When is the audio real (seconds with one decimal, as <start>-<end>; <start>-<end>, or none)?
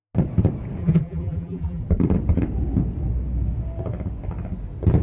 0.0-0.8; 1.8-5.0